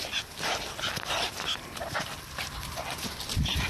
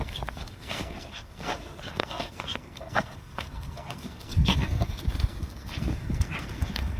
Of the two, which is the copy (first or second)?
second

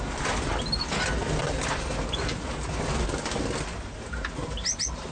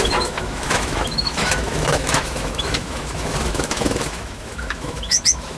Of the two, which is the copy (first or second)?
second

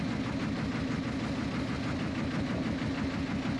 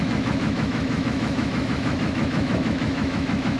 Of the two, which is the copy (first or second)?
second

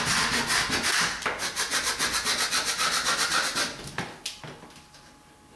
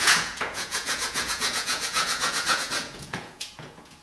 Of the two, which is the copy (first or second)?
second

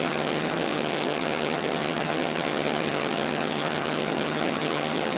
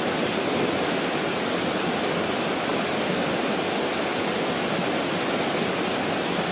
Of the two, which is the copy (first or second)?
first